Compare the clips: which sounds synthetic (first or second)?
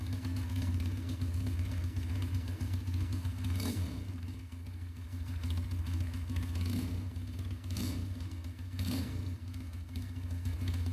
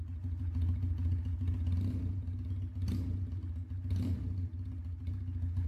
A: first